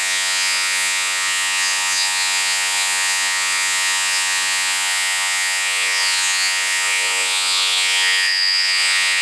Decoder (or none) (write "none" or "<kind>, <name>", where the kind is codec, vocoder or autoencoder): vocoder, Vocos